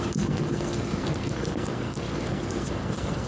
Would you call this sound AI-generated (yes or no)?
yes